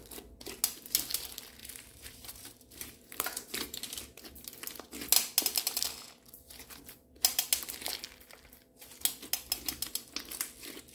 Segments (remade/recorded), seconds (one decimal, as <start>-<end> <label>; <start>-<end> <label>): 0.0-1.6 recorded; 1.6-3.8 remade; 3.8-10.9 recorded